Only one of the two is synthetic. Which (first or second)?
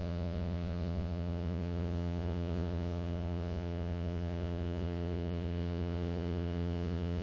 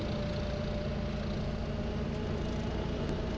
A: first